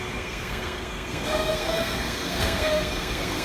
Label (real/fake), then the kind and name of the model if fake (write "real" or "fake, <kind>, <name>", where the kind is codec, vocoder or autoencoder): fake, codec, SNAC